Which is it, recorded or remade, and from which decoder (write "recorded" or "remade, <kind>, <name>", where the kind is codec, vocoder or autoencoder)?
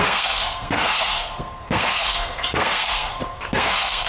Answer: remade, codec, SNAC